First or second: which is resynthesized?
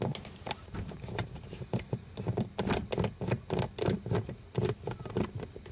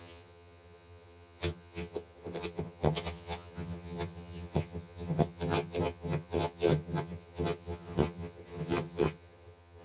second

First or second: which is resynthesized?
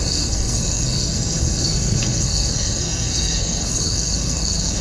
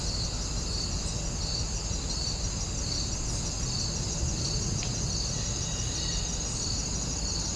first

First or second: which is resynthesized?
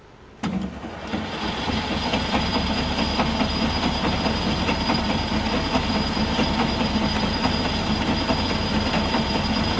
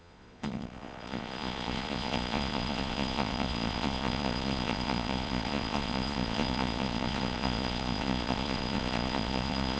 second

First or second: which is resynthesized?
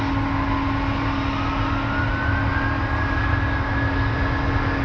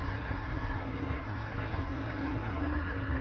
second